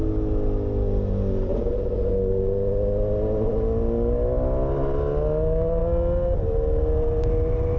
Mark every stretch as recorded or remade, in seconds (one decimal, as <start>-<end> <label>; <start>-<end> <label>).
0.0-7.8 recorded